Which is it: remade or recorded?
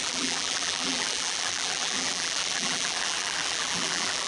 remade